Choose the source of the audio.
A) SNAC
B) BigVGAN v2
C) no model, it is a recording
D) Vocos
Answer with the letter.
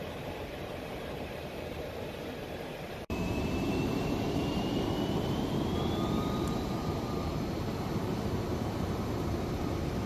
B